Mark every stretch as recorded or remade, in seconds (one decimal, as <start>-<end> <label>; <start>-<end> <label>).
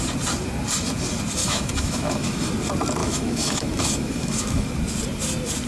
0.0-1.4 recorded; 1.4-2.5 remade; 2.5-3.0 recorded; 3.0-4.7 remade; 4.7-5.7 recorded